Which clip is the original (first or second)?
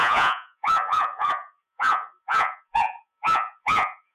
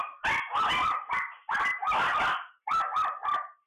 second